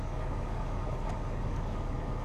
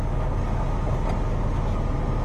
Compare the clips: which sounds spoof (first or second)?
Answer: first